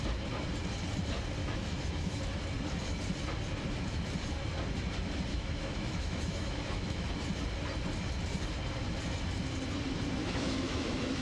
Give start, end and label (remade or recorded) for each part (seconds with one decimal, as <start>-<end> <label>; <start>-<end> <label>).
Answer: 0.0-1.4 recorded; 1.4-2.2 remade; 2.2-5.3 recorded; 5.3-7.1 remade; 7.1-10.2 recorded; 10.2-11.2 remade